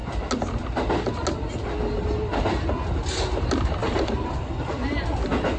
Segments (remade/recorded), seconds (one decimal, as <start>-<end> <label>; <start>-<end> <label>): 0.0-3.8 recorded; 3.8-4.9 remade; 4.9-5.6 recorded